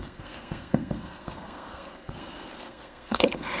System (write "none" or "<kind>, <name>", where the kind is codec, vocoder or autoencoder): codec, SNAC